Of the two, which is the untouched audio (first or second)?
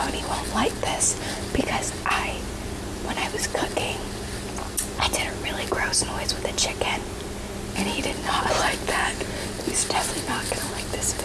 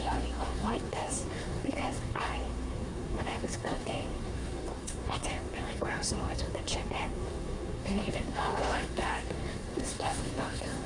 first